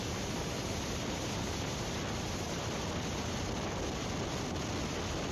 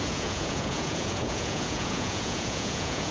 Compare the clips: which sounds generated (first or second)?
second